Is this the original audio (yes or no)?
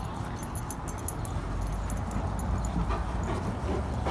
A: yes